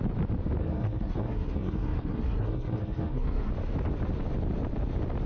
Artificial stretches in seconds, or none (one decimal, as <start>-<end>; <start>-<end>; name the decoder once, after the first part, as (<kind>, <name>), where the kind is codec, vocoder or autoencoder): 0.6-3.5 (codec, SNAC)